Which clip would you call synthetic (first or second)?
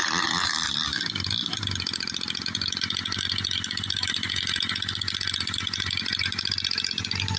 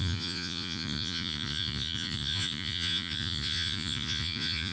second